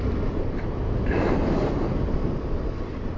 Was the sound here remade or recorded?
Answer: recorded